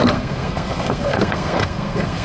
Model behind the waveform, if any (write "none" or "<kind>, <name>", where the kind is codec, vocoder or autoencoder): codec, SNAC